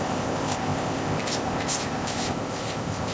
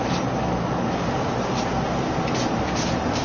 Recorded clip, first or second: second